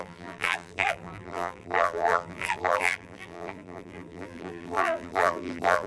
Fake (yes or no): yes